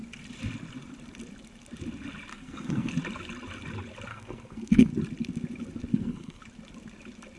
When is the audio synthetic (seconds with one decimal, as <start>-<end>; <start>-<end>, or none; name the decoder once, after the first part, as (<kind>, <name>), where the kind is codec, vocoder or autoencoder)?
2.3-2.9 (codec, SNAC); 4.1-4.9; 5.9-6.4